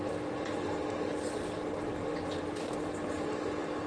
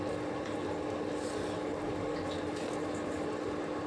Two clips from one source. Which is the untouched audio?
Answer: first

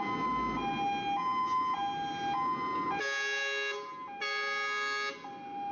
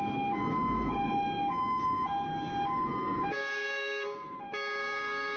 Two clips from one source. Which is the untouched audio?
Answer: first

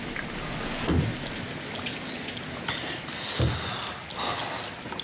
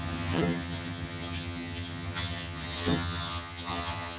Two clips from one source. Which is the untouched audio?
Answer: first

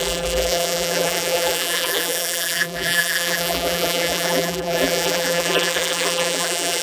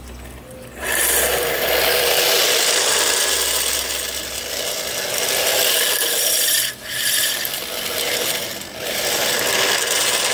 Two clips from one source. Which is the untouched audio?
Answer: second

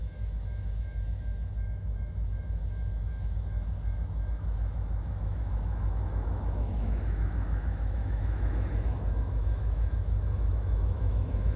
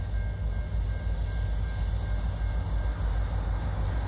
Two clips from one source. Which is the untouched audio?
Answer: second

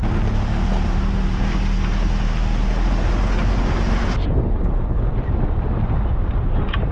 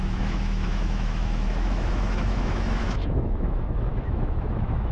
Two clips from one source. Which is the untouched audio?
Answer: first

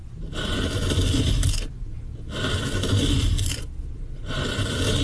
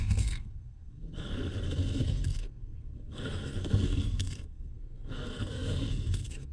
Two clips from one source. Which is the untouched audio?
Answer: first